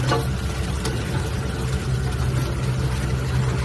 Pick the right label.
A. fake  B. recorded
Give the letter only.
B